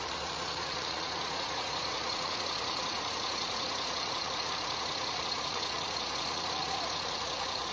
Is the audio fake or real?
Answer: fake